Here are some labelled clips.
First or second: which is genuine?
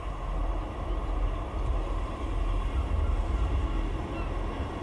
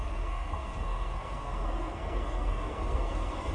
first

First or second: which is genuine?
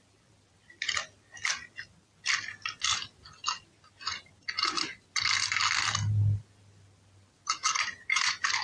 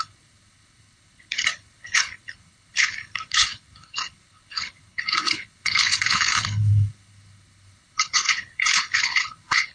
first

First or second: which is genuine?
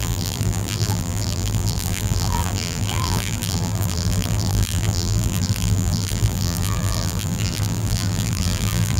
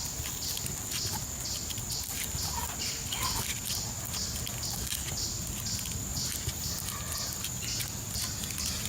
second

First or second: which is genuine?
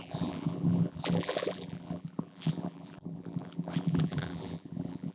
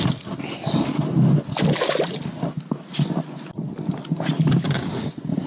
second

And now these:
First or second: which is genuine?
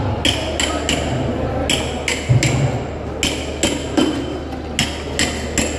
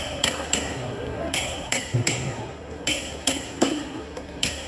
first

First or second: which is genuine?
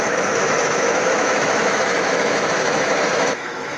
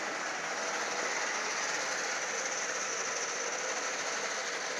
second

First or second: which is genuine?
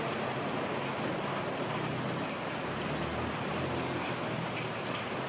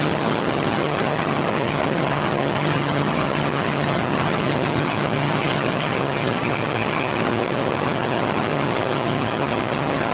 first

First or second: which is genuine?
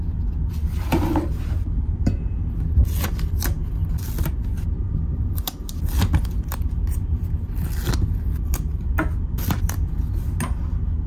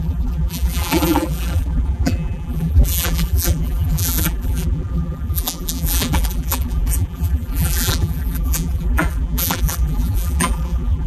first